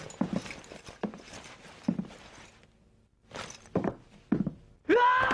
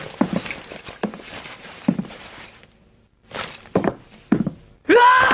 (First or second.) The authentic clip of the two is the first